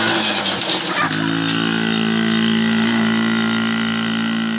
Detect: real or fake real